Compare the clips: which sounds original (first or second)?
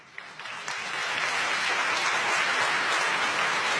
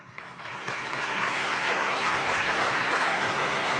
first